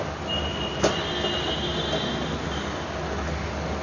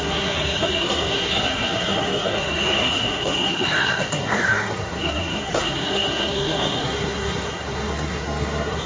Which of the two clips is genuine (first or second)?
first